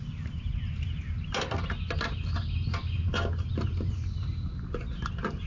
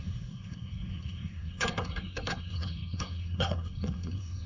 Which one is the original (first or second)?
first